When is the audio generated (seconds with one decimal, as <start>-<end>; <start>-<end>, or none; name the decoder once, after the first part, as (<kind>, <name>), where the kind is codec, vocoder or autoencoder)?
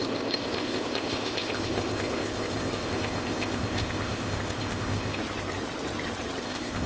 0.0-5.2 (codec, ZipCodec); 6.4-6.9